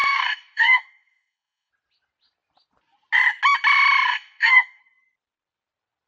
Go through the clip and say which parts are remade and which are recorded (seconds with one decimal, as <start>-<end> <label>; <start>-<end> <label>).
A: 0.0-1.7 remade; 1.7-4.1 recorded; 4.1-4.8 remade; 4.8-6.1 recorded